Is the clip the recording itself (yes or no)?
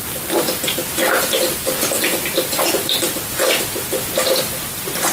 yes